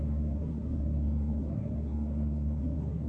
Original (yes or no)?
no